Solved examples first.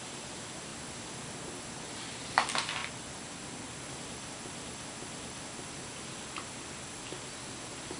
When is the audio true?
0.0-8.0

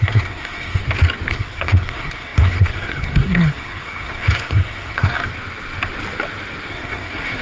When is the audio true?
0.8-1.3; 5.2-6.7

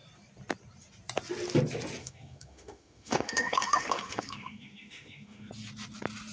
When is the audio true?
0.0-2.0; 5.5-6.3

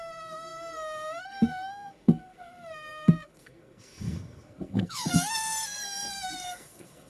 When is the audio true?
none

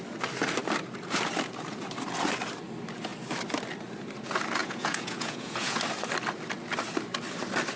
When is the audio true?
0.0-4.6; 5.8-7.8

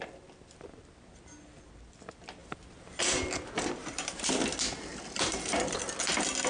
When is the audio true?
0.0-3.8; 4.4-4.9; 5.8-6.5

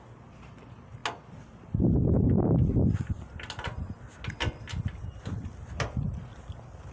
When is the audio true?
0.0-6.9